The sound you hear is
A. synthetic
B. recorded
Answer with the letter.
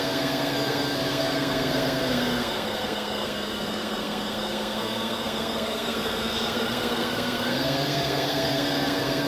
A